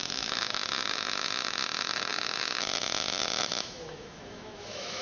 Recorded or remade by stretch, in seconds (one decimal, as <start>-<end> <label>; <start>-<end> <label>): 0.0-5.0 remade